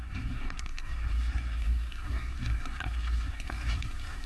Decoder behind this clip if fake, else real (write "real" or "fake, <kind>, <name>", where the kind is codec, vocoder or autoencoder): fake, codec, SNAC